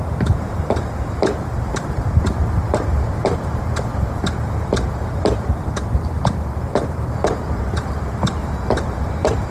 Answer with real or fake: fake